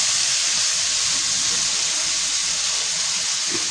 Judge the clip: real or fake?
real